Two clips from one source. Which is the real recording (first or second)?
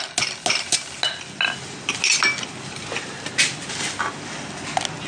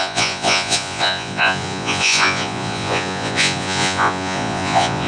first